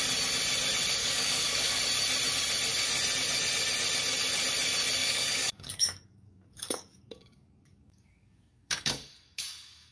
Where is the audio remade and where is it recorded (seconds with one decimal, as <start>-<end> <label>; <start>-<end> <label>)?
0.0-1.0 recorded; 1.0-1.8 remade; 1.8-5.0 recorded; 5.0-9.9 remade